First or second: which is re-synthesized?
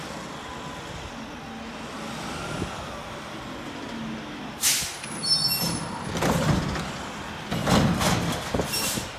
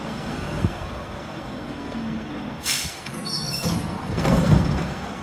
second